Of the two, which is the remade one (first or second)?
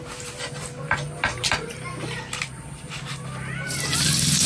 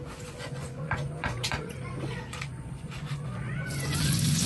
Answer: second